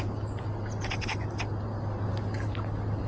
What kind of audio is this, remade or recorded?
recorded